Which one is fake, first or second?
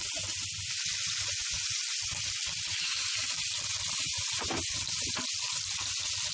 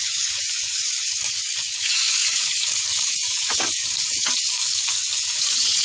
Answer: second